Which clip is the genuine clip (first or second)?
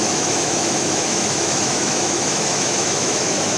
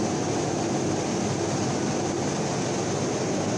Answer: second